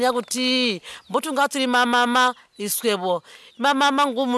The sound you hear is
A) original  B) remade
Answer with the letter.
A